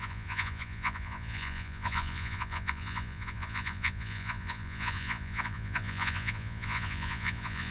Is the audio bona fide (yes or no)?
no